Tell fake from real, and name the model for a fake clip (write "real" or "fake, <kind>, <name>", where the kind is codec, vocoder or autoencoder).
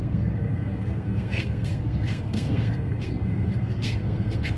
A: fake, codec, SNAC